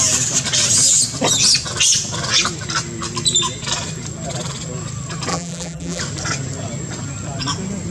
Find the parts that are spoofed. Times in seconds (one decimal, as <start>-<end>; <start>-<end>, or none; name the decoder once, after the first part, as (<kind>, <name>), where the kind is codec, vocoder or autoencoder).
5.3-6.0 (vocoder, BigVGAN v2)